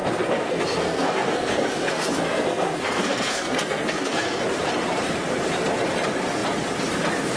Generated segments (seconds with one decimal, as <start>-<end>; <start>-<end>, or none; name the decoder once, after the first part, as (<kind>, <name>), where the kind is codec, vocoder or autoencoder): 0.0-4.4 (codec, SNAC)